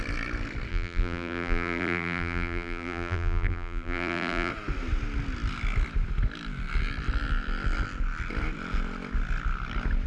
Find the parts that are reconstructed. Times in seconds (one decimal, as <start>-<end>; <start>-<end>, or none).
0.7-4.5